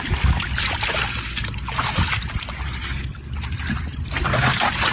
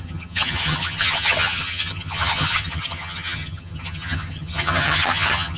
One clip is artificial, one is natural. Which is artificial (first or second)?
second